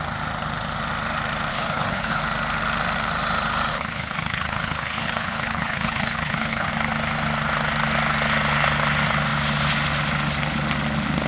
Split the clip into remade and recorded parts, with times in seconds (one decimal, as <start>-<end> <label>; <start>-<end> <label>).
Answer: 0.0-1.5 recorded; 1.5-2.2 remade; 2.2-3.7 recorded; 3.7-6.7 remade; 6.7-11.3 recorded